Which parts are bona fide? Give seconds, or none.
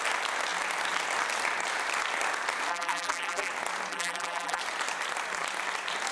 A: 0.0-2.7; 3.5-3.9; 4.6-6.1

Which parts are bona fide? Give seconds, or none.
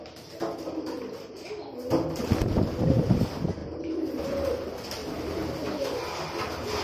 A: 0.0-6.8